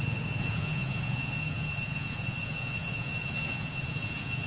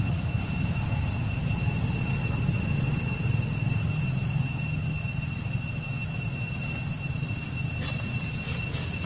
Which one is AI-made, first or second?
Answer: first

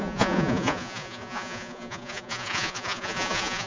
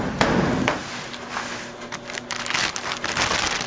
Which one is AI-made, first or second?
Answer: first